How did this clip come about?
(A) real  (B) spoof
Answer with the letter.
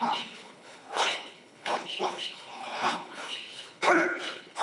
B